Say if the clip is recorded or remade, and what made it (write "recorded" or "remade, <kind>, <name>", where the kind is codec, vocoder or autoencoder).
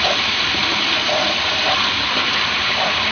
remade, vocoder, BigVGAN v2